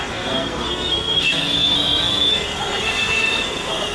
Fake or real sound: fake